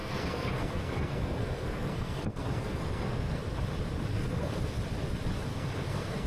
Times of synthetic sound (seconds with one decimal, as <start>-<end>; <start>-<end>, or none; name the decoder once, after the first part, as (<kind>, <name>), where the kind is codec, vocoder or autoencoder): 0.0-3.4 (codec, SNAC); 4.1-4.6; 5.5-6.3